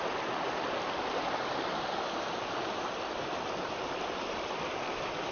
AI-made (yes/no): no